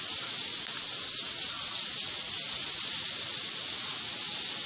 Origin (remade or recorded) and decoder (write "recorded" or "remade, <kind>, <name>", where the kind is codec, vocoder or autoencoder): recorded